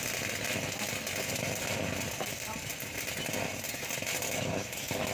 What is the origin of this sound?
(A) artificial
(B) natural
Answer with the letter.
B